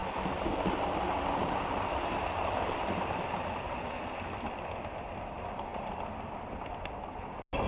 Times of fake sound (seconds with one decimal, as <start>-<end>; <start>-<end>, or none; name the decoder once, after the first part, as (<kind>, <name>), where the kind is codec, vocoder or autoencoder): 0.0-3.9 (vocoder, BigVGAN v2); 5.7-6.9